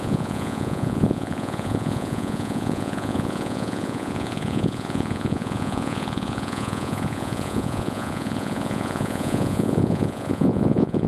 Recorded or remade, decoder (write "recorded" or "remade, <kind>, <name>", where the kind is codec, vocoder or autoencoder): remade, vocoder, Vocos